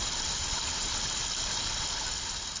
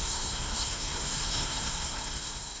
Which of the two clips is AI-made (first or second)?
second